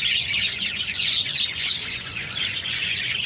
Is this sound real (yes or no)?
no